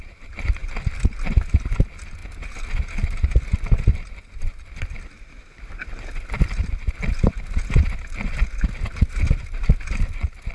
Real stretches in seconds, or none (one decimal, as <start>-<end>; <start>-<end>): 0.0-10.5